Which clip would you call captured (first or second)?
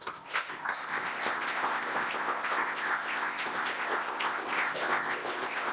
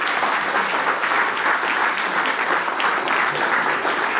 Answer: second